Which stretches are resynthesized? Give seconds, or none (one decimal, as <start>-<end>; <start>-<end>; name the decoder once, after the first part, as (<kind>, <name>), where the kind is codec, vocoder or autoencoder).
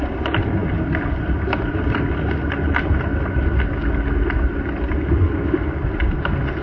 none